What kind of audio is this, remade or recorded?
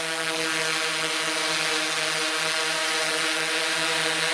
recorded